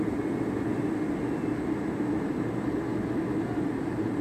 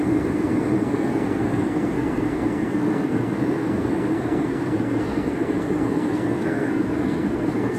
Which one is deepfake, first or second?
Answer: second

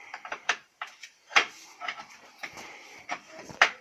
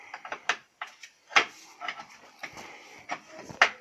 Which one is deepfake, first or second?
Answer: first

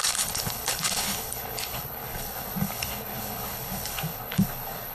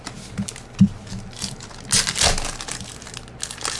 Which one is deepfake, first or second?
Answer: first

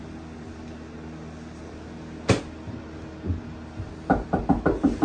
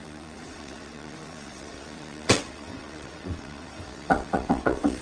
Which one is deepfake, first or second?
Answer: second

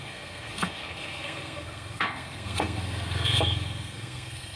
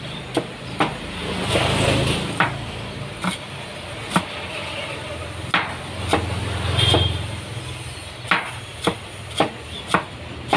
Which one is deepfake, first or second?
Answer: first